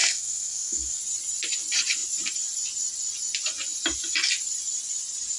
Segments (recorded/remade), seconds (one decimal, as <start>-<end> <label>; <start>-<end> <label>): 0.0-1.0 remade; 1.0-5.4 recorded